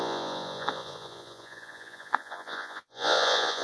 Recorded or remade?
remade